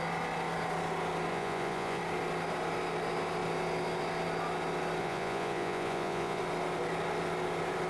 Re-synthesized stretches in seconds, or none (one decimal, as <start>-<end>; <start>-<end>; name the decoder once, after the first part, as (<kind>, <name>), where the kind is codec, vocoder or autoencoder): 1.3-2.0 (vocoder, Vocos); 5.0-6.4